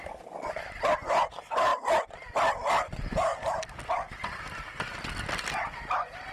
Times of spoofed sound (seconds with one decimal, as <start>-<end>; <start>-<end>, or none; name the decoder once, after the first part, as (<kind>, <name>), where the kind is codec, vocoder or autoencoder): none